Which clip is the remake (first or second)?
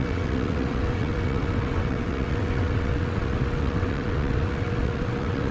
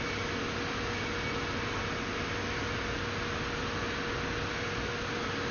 first